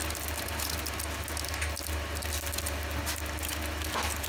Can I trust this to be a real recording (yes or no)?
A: yes